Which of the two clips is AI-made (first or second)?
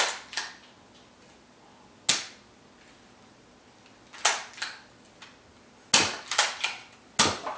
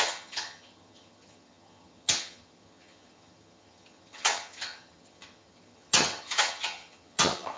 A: second